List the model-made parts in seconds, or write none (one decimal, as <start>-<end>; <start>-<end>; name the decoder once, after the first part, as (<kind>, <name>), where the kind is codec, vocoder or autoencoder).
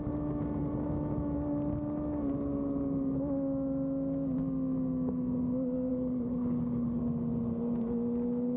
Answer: 5.9-7.0 (codec, HILCodec)